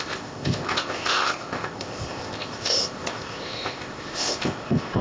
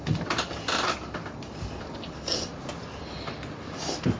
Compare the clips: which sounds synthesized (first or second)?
first